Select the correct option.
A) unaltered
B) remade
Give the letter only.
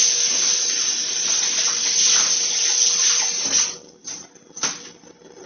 A